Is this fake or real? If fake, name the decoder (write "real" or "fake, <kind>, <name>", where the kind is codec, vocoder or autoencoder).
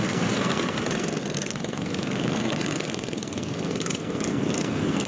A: fake, codec, SNAC